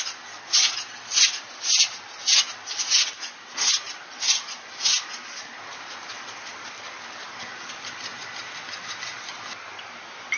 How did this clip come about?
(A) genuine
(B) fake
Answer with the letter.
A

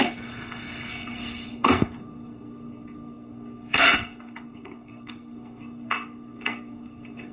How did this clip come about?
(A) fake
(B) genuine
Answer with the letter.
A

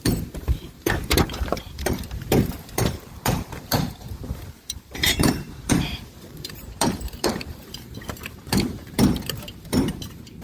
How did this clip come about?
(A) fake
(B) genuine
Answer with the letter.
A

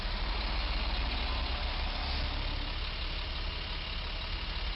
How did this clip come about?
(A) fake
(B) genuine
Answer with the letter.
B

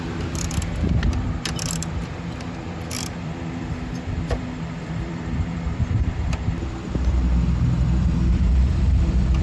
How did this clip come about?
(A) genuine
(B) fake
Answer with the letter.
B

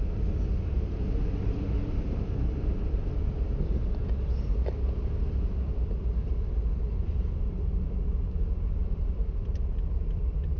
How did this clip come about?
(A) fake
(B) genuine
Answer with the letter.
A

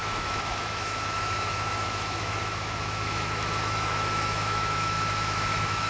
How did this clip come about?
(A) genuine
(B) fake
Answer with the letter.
B